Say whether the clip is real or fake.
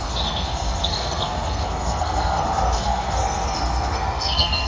fake